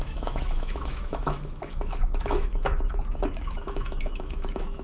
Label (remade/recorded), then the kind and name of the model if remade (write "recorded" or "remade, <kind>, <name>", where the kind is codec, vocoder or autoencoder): remade, autoencoder, DAC-VAE